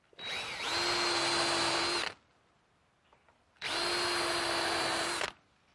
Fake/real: real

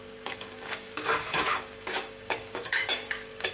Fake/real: fake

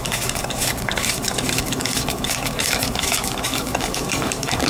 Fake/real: fake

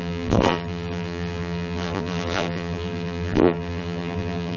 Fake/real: fake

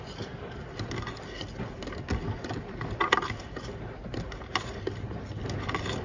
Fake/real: real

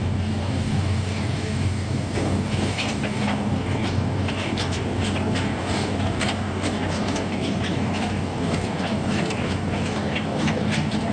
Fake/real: fake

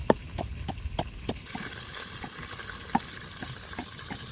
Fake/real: real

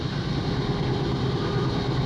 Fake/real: real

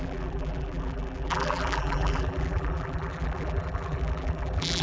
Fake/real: fake